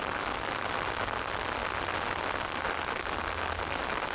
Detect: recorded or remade recorded